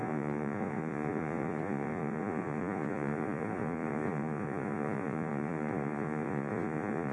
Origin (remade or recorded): remade